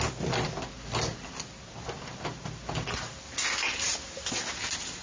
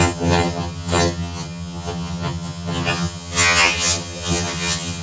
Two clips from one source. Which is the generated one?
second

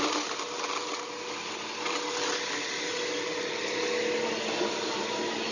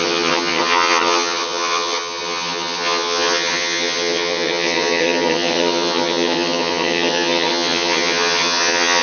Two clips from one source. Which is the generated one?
second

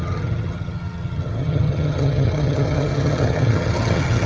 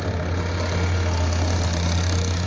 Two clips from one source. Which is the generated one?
first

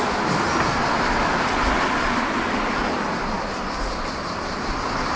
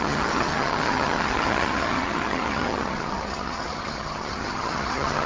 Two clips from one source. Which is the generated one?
second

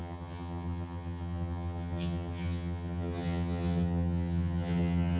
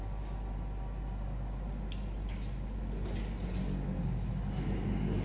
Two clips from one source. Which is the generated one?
first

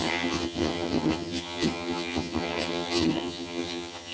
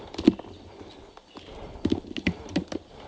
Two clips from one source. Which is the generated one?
first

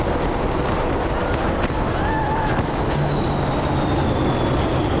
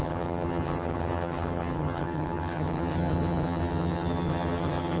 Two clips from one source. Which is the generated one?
second